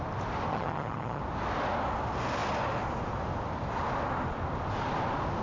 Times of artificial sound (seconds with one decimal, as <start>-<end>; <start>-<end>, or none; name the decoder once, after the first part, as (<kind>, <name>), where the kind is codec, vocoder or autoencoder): 0.5-1.2 (vocoder, HiFi-GAN)